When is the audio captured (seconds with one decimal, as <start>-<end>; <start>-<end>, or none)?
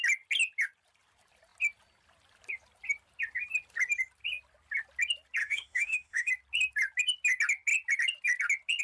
0.0-5.4; 6.3-8.8